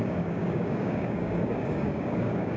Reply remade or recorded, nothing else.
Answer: remade